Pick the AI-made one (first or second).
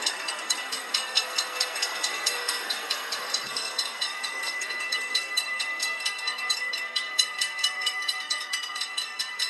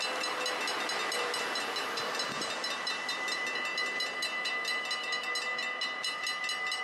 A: first